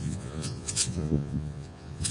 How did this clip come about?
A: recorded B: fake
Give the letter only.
B